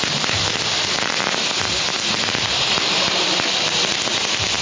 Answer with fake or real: real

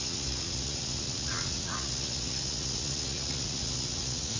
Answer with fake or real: fake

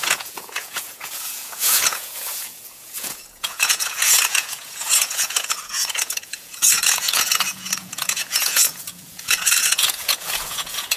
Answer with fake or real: fake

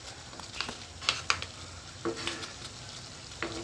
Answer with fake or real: real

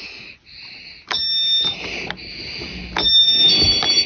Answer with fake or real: real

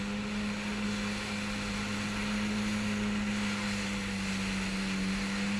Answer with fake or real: real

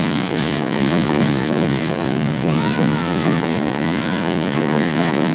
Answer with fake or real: fake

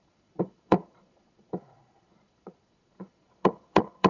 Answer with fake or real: fake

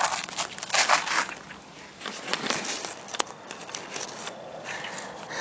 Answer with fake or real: real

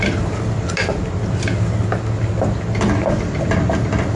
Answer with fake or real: real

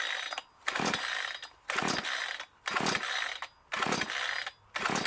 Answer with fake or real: real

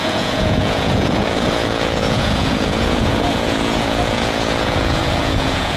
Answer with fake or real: fake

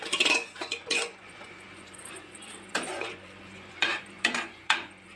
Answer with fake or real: fake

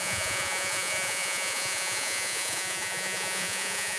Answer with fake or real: fake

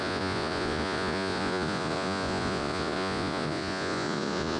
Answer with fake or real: fake